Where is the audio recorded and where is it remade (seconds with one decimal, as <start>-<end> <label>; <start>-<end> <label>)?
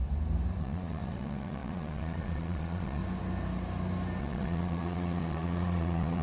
0.0-0.6 recorded; 0.6-3.0 remade; 3.0-4.2 recorded; 4.2-6.2 remade